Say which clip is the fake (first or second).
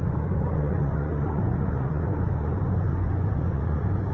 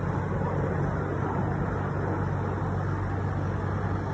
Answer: first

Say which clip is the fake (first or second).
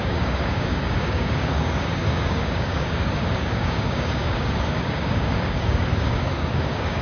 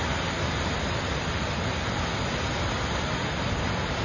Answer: first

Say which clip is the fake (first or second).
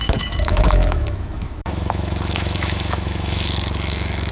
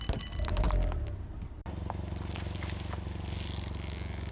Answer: first